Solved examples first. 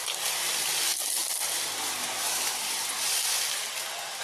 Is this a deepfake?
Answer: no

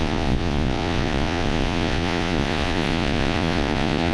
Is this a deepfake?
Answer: yes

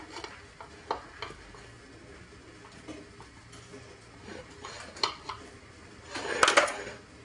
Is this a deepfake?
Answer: no